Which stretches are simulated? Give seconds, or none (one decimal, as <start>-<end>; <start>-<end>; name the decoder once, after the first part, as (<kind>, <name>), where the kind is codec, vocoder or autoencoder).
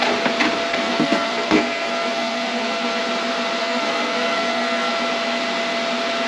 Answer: 0.7-3.0 (codec, SNAC); 3.6-4.9